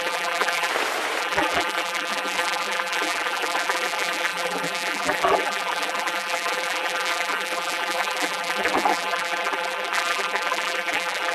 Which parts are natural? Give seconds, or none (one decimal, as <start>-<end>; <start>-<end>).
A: 0.7-1.2